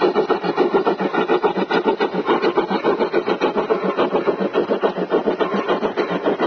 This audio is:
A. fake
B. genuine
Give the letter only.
B